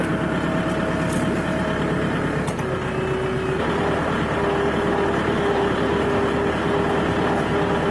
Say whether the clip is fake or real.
real